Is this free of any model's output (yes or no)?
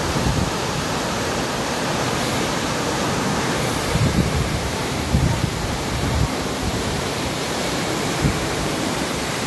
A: no